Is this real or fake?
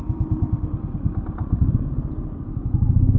fake